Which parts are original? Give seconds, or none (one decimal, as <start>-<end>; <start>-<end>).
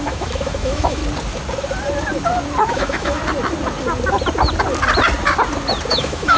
1.0-2.7; 3.2-5.9